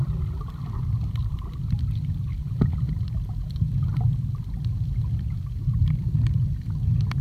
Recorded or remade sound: recorded